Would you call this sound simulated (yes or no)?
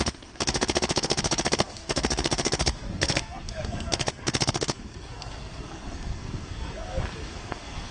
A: yes